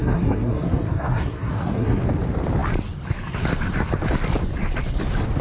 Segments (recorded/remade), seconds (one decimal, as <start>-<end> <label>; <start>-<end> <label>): 0.0-2.0 remade; 2.0-5.4 recorded

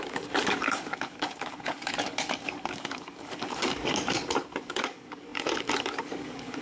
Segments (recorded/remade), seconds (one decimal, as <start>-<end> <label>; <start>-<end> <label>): 0.0-6.6 remade

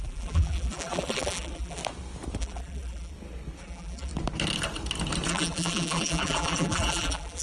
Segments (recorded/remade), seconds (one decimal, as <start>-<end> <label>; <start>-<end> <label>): 0.0-1.8 remade; 1.8-2.4 recorded; 2.4-3.1 remade; 3.1-3.6 recorded; 3.6-4.1 remade; 4.1-5.3 recorded; 5.3-7.4 remade

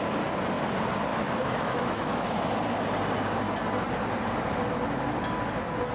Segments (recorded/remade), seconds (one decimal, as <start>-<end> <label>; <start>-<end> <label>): 0.0-1.1 recorded; 1.1-2.4 remade; 2.4-5.9 recorded

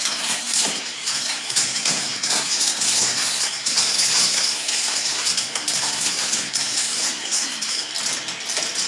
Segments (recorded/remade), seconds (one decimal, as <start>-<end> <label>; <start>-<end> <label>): 0.0-7.9 remade; 7.9-8.9 recorded

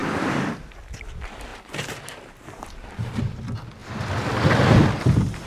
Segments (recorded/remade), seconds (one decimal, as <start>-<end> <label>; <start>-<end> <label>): 0.0-1.5 recorded; 1.5-3.2 remade; 3.2-5.5 recorded

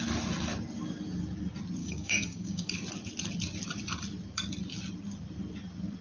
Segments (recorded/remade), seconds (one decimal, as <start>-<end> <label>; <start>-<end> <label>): 0.0-1.8 recorded; 1.8-2.7 remade; 2.7-6.0 recorded

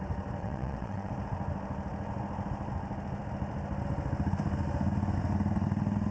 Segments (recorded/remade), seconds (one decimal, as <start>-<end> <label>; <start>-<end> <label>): 0.0-0.4 recorded; 0.4-1.1 remade; 1.1-6.1 recorded